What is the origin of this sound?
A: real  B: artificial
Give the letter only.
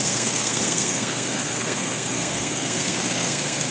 B